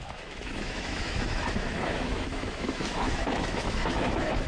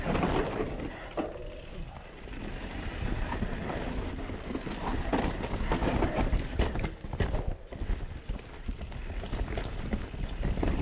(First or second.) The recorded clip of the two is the second